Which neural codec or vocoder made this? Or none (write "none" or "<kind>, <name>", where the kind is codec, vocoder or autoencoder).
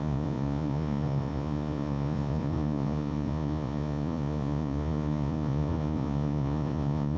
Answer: vocoder, Vocos